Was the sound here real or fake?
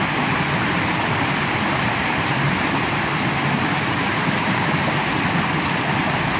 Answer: real